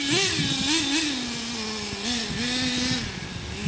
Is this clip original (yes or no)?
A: yes